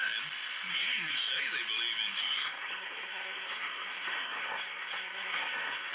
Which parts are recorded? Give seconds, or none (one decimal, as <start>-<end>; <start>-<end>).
0.0-0.7; 1.3-2.2